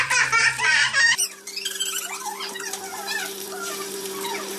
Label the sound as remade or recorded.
remade